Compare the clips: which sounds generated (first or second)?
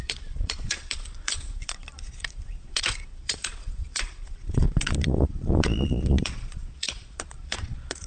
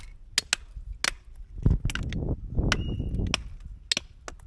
first